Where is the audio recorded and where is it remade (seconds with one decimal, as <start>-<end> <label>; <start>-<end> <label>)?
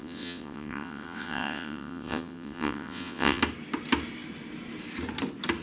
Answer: 0.0-3.4 remade; 3.4-5.6 recorded